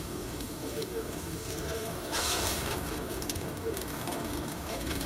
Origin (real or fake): fake